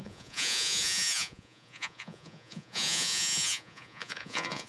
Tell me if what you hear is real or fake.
fake